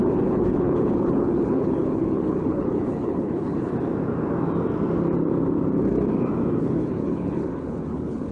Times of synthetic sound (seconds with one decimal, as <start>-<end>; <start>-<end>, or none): 0.0-3.7; 6.6-8.3

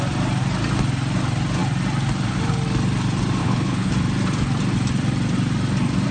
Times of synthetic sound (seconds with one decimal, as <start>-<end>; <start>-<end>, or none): 3.4-3.9

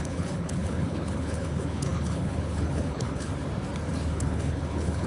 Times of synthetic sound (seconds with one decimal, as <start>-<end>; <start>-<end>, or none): 0.0-3.3; 4.1-5.1

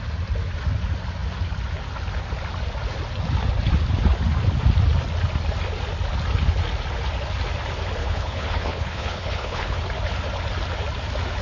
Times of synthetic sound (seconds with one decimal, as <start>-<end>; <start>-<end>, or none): 8.0-9.8

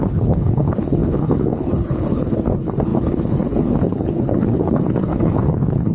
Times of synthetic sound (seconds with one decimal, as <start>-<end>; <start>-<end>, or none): 0.0-5.9

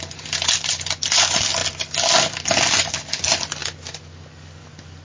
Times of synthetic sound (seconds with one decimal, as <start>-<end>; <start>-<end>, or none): none